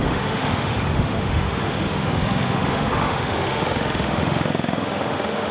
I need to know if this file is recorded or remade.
remade